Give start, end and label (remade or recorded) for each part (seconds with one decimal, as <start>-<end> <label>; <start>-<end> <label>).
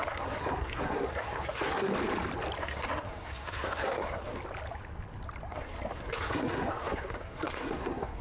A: 0.0-1.9 remade; 1.9-2.6 recorded; 2.6-4.4 remade; 4.4-5.5 recorded; 5.5-8.2 remade